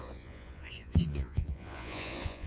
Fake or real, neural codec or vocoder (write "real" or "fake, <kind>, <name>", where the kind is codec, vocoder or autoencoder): fake, vocoder, Vocos